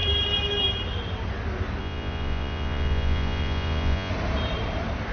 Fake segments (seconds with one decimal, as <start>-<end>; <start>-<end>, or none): 1.8-4.1